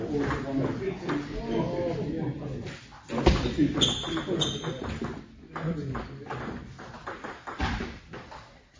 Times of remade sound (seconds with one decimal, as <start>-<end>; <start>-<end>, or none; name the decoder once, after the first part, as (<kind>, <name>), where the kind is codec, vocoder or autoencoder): none